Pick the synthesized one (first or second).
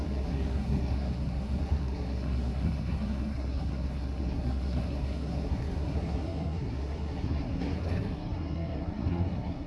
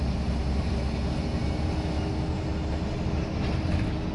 first